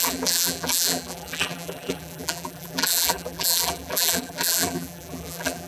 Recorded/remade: remade